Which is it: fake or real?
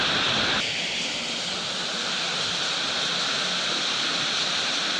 real